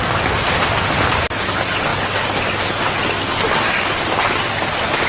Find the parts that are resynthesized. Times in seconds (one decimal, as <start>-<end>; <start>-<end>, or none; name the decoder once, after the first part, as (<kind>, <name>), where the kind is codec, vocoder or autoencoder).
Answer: none